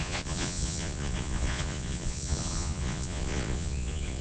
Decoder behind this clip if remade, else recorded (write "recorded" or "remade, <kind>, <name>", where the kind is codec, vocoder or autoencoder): remade, vocoder, Vocos